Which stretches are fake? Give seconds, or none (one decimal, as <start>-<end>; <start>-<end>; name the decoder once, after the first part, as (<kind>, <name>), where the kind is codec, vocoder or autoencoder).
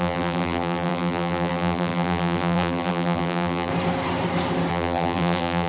0.0-3.7 (vocoder, BigVGAN v2); 4.7-5.7